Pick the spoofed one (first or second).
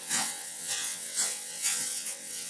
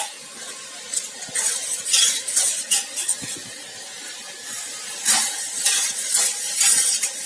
first